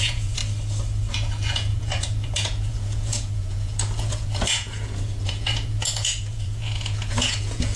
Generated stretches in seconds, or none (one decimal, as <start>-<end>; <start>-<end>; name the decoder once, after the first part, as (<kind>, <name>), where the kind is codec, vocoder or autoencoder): 0.0-0.4 (vocoder, Vocos); 1.1-7.8